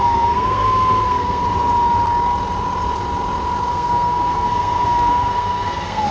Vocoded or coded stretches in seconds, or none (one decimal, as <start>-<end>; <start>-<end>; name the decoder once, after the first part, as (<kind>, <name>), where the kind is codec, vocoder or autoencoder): 0.0-1.4 (codec, SNAC); 3.7-6.1